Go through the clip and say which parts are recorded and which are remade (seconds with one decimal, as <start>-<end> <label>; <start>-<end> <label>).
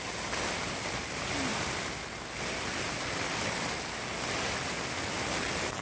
0.0-5.8 recorded